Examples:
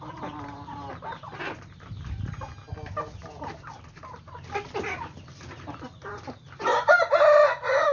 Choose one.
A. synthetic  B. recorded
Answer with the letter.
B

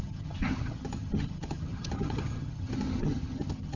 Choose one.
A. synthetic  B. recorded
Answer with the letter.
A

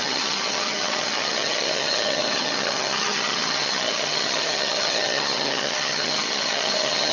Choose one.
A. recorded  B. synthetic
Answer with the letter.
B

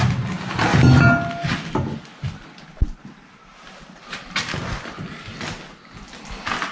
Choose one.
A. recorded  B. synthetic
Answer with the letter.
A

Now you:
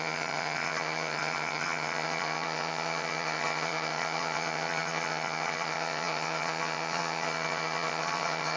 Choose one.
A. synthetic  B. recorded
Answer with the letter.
A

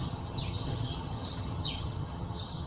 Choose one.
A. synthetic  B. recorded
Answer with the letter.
A